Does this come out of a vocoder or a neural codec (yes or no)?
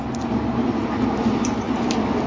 no